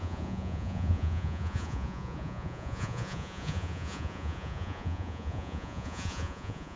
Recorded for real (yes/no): no